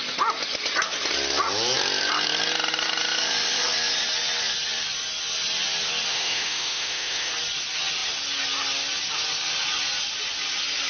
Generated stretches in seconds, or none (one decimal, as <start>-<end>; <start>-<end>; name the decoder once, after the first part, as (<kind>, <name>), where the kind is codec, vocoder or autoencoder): 6.1-7.3 (autoencoder, DAC-VAE)